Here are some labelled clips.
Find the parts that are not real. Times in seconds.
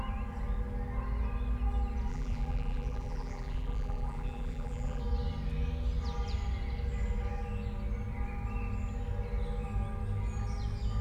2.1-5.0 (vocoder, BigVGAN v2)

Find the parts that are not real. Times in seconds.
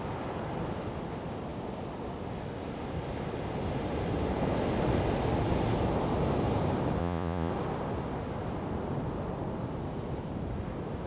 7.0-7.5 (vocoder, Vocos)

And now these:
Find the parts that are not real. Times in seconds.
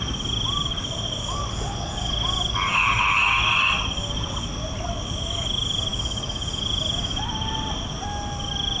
none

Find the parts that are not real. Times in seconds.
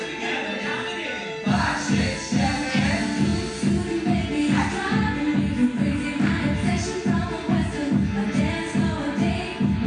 none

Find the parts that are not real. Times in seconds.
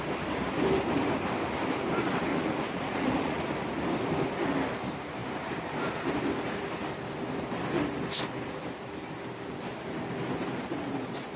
2.3-3.5 (vocoder, Vocos)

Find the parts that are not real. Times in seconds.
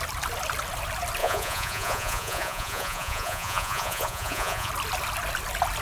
1.2-4.7 (vocoder, Vocos)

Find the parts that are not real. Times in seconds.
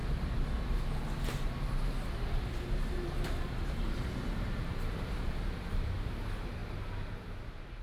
0.0-6.6 (vocoder, BigVGAN v2); 7.1-7.8